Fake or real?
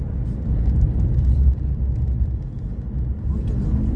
real